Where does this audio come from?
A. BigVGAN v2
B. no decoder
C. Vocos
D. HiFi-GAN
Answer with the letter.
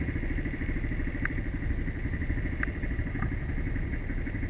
B